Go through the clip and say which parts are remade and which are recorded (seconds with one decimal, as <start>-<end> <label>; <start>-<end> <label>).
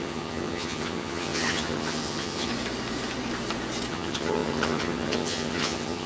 0.0-2.5 remade; 2.5-3.9 recorded; 3.9-6.1 remade